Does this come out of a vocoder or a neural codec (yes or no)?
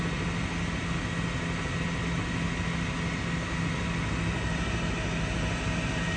no